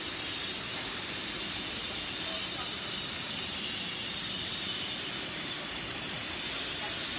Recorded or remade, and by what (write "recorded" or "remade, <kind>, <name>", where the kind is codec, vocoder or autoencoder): remade, vocoder, BigVGAN v2